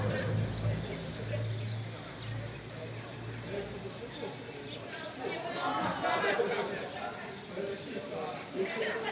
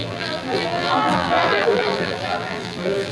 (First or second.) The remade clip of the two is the second